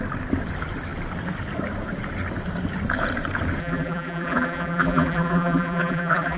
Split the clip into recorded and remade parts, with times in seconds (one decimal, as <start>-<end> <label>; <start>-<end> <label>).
0.0-3.6 recorded; 3.6-6.4 remade

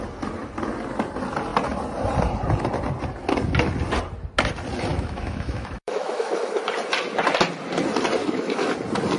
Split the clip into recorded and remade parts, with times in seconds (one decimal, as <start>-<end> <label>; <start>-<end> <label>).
0.0-4.9 recorded; 4.9-6.6 remade; 6.6-8.2 recorded; 8.2-8.7 remade; 8.7-9.2 recorded

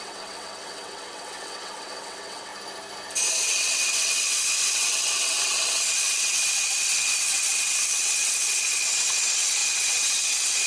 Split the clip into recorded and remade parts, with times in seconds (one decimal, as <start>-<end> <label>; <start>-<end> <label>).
0.0-2.5 remade; 2.5-3.3 recorded; 3.3-10.7 remade

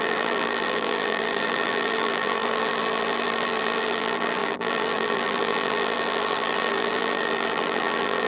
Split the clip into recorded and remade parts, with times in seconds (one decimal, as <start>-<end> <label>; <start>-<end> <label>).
0.0-8.3 remade

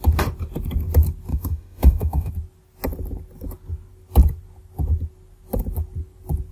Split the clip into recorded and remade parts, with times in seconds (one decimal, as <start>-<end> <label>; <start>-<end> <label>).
0.0-1.3 recorded; 1.3-2.3 remade; 2.3-6.5 recorded